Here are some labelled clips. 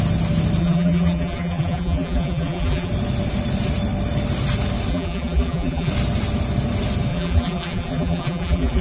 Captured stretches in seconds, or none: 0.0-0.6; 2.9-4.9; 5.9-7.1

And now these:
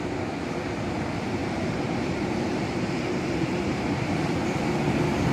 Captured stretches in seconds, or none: 0.0-1.4; 4.6-5.3

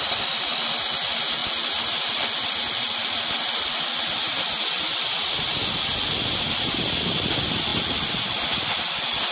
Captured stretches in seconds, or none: 0.0-9.3